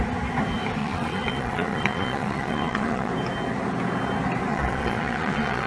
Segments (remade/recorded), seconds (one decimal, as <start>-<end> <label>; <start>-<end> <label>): 0.0-0.8 recorded; 0.8-3.1 remade; 3.1-4.5 recorded; 4.5-5.7 remade